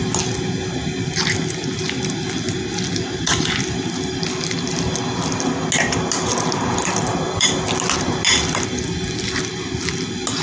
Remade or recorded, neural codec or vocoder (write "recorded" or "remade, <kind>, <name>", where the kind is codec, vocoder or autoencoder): recorded